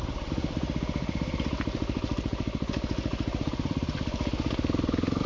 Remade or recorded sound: remade